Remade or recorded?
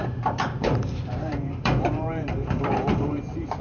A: remade